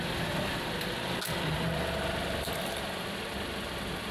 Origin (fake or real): real